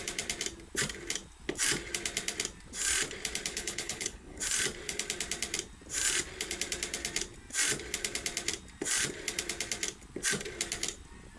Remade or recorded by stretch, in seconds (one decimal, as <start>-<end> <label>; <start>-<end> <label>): 0.0-3.5 recorded; 3.5-4.4 remade; 4.4-11.4 recorded